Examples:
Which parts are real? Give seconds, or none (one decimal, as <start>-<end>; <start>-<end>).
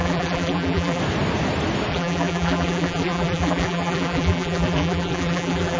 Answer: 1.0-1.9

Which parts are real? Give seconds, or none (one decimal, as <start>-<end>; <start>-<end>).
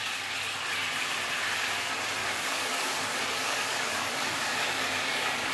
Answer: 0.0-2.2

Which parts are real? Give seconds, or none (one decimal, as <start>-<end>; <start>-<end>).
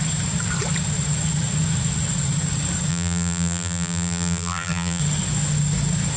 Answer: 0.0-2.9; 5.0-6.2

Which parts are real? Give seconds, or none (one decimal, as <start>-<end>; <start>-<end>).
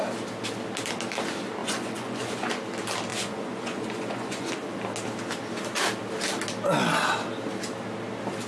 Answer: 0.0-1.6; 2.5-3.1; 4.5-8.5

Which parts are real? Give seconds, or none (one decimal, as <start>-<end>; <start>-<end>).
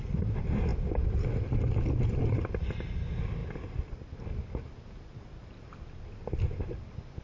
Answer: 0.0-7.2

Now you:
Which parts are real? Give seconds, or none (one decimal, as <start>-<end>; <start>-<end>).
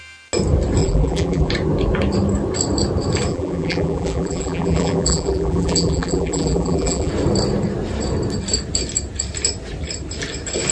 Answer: 0.0-0.8; 1.5-3.3; 7.1-10.7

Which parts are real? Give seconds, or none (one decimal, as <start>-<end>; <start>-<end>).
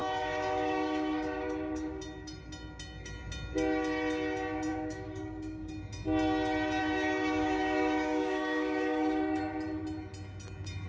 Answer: 2.0-4.7; 5.7-6.8; 9.4-10.9